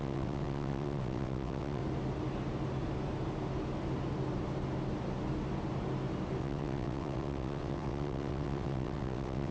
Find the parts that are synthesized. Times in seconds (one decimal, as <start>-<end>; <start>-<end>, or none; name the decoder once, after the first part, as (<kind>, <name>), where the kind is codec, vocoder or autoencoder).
0.0-1.8 (vocoder, WaveNeXt); 6.4-9.5